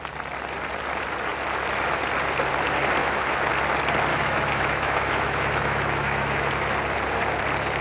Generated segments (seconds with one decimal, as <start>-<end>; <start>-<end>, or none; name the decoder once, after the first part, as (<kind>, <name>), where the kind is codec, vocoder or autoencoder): 3.0-3.5 (autoencoder, DAC-VAE); 4.1-6.5